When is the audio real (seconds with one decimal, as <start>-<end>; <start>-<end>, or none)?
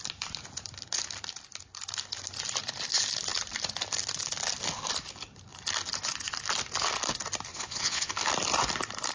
0.0-7.5; 8.1-9.1